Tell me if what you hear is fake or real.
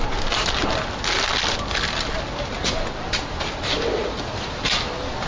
real